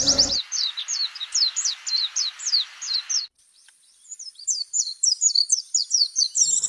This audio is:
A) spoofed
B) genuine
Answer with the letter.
A